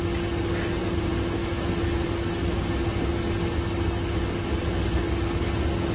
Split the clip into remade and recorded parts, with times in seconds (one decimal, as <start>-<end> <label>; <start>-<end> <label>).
0.0-5.9 recorded